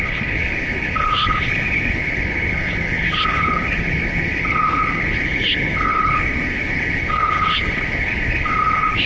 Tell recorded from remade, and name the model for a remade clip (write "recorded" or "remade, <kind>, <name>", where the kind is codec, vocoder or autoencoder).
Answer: remade, codec, HILCodec